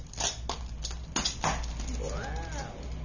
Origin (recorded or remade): recorded